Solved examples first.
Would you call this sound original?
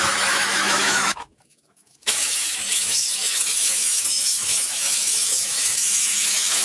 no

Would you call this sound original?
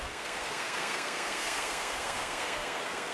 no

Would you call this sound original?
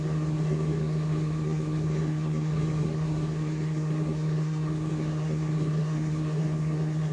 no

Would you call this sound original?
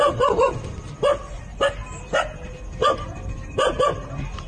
yes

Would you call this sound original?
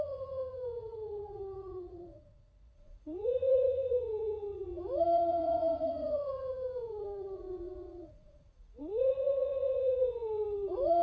no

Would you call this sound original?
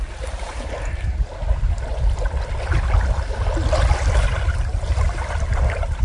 yes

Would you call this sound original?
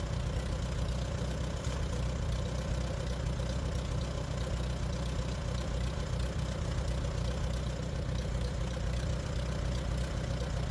yes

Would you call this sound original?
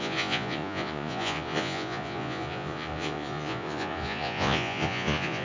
no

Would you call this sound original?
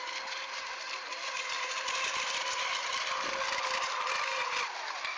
yes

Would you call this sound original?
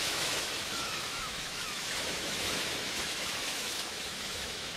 no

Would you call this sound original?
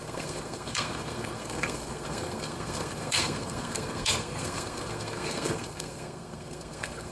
no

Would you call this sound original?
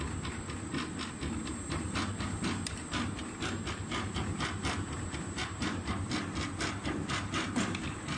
yes